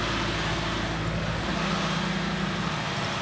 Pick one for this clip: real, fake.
real